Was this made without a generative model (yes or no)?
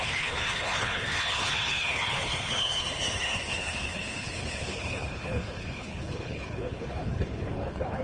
no